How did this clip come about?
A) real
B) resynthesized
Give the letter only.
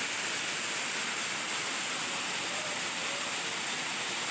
A